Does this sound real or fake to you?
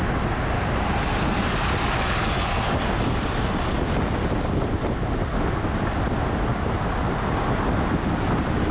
real